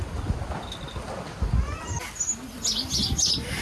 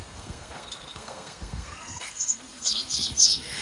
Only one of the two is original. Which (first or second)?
first